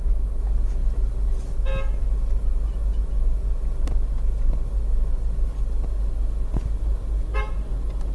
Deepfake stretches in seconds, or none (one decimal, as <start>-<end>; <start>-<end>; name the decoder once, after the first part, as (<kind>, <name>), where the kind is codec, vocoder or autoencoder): none